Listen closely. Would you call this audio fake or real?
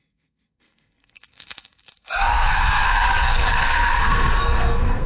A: fake